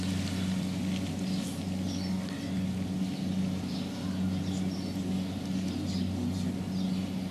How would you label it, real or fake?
real